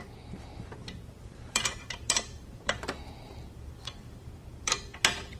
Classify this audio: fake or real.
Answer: fake